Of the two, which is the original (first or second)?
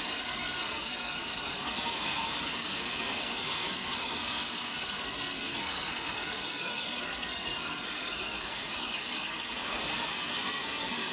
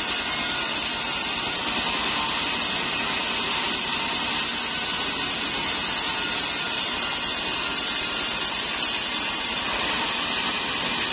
second